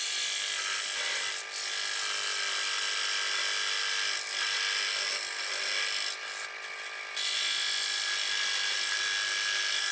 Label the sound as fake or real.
real